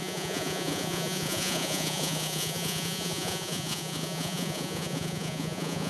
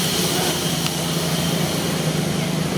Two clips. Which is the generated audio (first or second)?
first